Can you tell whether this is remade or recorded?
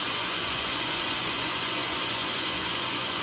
remade